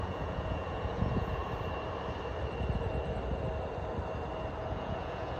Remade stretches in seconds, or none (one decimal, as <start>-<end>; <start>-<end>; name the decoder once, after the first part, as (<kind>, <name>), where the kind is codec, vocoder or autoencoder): 0.0-1.4 (vocoder, Vocos); 4.6-5.4